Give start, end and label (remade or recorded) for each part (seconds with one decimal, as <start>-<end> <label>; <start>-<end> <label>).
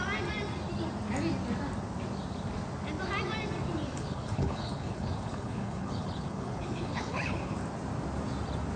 0.0-3.9 recorded; 3.9-7.6 remade; 7.6-8.8 recorded